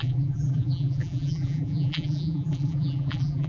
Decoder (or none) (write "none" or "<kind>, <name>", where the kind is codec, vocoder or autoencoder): vocoder, BigVGAN v2